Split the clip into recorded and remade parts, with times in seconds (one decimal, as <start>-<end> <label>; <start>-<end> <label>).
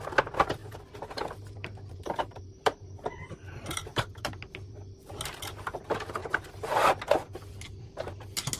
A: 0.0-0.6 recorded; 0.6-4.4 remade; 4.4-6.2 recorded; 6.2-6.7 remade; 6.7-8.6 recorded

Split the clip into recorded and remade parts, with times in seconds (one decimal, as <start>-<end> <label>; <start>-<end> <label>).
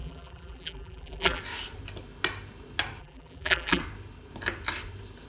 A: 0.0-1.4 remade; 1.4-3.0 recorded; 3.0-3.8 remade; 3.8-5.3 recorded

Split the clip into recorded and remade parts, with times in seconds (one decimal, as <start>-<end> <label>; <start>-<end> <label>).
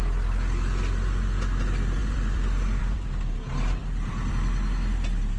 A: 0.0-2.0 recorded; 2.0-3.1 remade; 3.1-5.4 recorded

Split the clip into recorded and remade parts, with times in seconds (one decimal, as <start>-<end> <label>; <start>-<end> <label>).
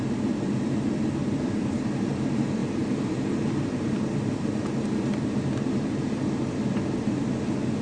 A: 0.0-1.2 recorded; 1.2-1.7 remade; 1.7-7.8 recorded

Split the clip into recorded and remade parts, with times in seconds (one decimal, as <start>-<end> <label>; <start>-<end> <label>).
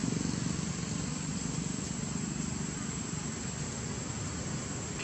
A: 0.0-0.7 recorded; 0.7-5.0 remade